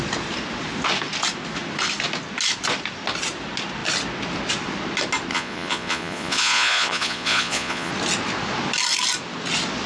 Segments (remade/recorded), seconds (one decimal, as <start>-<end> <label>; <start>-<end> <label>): 0.0-5.3 recorded; 5.3-7.9 remade; 7.9-9.9 recorded